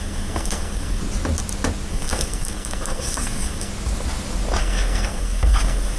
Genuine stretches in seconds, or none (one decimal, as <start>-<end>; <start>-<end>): 1.0-1.9; 3.7-4.6